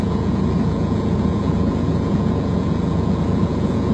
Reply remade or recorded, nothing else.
remade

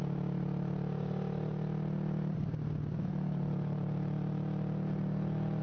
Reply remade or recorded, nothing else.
recorded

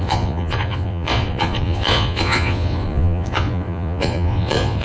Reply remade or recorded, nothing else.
remade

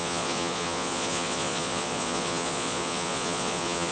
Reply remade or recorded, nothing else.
remade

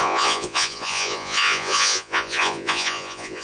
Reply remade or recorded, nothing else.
remade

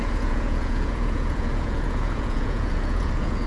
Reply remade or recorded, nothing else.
remade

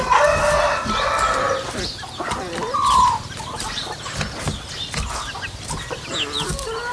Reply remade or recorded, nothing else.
recorded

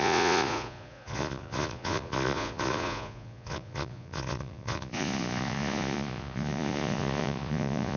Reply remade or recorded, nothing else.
remade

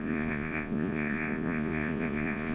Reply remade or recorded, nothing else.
remade